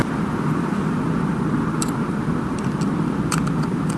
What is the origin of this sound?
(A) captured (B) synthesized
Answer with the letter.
B